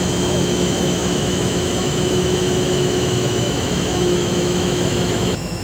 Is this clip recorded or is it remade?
remade